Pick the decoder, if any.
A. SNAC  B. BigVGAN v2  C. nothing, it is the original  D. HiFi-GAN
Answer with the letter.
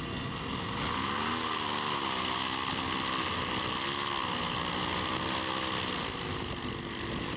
C